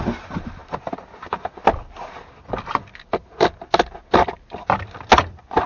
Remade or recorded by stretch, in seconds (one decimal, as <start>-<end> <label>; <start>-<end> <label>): 0.0-5.7 recorded